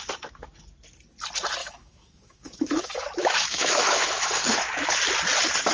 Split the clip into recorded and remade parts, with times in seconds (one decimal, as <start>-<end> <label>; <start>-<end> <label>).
0.0-1.6 recorded; 1.6-5.0 remade; 5.0-5.7 recorded